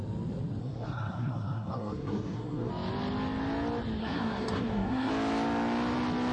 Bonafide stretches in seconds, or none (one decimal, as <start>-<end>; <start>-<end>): 0.0-0.6; 2.7-4.0; 5.1-6.3